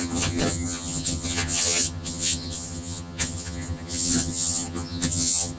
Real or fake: fake